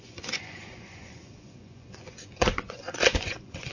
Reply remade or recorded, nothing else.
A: remade